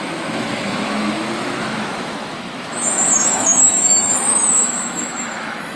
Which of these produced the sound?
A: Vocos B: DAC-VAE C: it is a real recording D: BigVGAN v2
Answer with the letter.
B